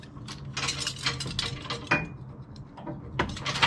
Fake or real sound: real